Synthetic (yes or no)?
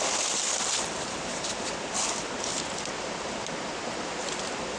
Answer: no